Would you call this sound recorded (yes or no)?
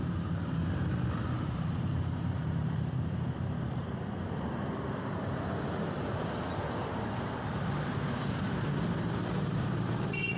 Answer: no